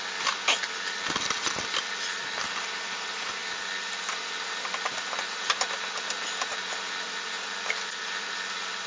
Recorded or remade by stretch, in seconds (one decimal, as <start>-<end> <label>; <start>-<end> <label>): 0.0-8.9 recorded